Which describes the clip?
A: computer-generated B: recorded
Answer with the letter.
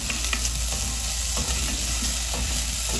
B